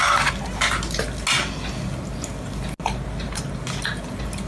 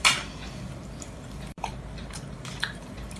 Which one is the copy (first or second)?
second